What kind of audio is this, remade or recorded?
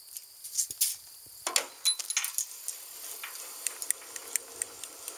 recorded